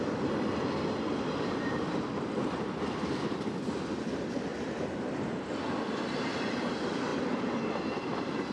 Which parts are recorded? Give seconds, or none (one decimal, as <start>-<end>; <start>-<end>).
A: 4.5-5.6